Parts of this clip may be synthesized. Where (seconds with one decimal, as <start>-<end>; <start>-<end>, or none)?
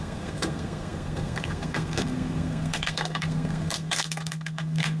0.0-5.0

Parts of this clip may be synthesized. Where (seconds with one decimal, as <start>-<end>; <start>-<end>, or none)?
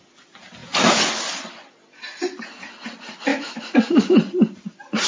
3.3-4.0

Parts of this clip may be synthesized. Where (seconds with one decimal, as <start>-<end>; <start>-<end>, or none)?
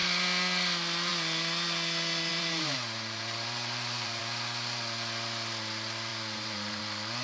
2.3-4.2; 6.1-6.8